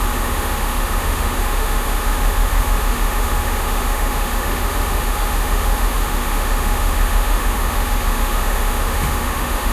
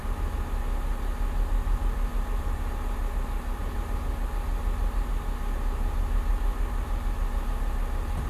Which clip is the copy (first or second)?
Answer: first